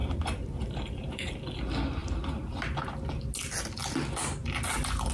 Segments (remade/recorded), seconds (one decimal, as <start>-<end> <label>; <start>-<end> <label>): 0.0-1.3 remade; 1.3-2.0 recorded; 2.0-2.6 remade; 2.6-5.1 recorded